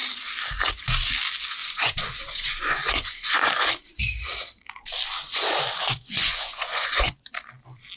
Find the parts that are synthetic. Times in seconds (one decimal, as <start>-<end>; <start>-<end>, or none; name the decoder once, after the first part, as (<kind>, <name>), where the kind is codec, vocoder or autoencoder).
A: 1.6-3.7 (vocoder, Vocos); 5.8-7.3